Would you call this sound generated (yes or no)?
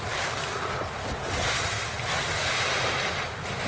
no